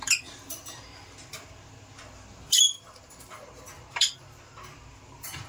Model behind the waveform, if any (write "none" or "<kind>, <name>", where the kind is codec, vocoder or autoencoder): vocoder, BigVGAN v2